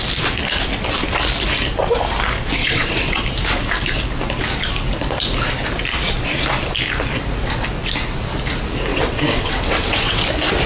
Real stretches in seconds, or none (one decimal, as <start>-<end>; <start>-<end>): 0.0-2.6; 3.2-8.9; 10.2-10.7